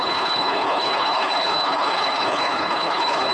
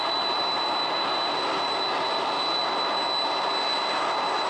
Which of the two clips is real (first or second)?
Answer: second